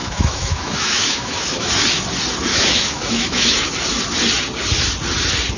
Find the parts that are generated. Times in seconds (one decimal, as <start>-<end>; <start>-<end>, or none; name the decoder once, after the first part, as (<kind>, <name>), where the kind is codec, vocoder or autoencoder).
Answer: 0.0-1.7 (autoencoder, DAC-VAE); 2.5-3.7